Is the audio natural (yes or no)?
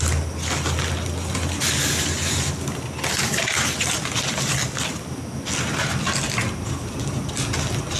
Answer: yes